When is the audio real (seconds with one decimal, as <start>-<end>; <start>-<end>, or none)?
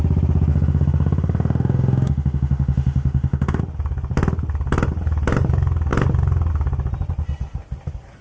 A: 0.0-0.5; 3.6-8.2